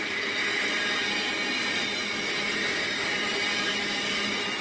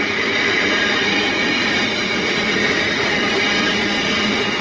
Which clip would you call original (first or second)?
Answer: first